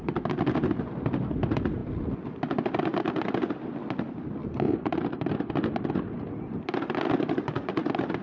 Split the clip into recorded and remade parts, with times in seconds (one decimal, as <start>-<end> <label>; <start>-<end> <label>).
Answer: 0.0-8.2 recorded

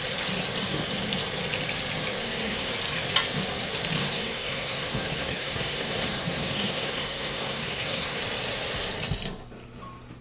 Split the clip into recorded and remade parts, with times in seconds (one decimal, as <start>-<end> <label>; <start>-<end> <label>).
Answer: 0.0-2.2 recorded; 2.2-2.7 remade; 2.7-4.0 recorded; 4.0-8.2 remade; 8.2-10.2 recorded

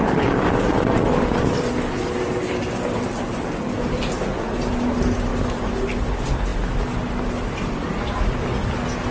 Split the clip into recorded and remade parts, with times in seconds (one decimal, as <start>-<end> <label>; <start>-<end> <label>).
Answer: 0.0-9.1 recorded

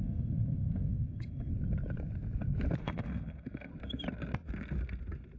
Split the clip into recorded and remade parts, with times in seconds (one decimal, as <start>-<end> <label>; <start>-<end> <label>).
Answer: 0.0-1.5 remade; 1.5-2.8 recorded; 2.8-3.7 remade; 3.7-5.4 recorded

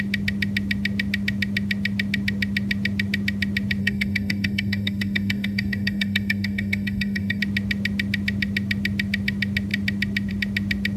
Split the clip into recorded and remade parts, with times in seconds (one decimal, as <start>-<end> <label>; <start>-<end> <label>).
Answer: 0.0-3.8 recorded; 3.8-7.4 remade; 7.4-11.0 recorded

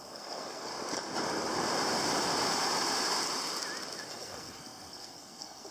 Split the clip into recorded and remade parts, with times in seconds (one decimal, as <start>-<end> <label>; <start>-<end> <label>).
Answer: 0.0-0.7 remade; 0.7-4.1 recorded; 4.1-5.7 remade